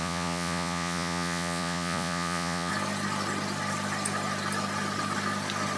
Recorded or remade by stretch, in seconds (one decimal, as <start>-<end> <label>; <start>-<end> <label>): 0.0-2.7 remade; 2.7-5.8 recorded